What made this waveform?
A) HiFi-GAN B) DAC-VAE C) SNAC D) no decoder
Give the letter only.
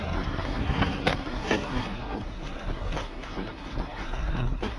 C